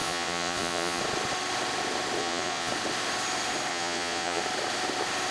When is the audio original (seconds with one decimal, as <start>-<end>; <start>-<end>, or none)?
1.0-2.2; 2.7-3.7; 4.4-5.3